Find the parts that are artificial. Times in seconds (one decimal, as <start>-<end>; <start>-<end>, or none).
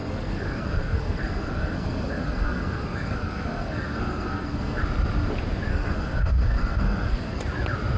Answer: 0.0-4.8; 5.7-7.4